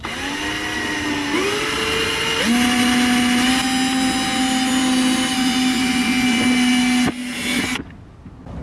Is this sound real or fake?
real